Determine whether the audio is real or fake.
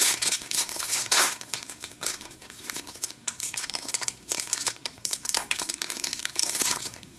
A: fake